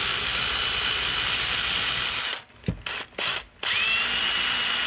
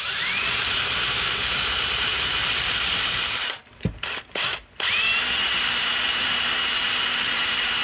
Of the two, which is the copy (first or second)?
second